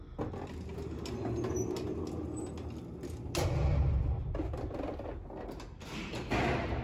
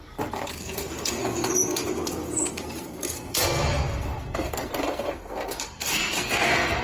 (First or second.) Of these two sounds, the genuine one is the first